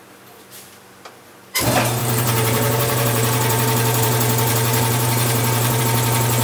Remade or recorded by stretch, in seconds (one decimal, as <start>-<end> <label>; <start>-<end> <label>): 0.0-2.0 recorded; 2.0-5.8 remade; 5.8-6.4 recorded